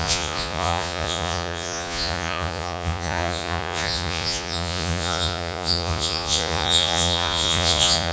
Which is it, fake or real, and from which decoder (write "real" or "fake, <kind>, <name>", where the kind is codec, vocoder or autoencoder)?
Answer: fake, vocoder, Vocos